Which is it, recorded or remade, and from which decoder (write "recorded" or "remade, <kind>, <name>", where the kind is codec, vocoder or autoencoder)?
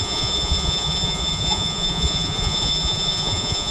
remade, vocoder, Vocos